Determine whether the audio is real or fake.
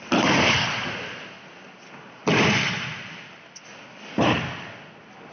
real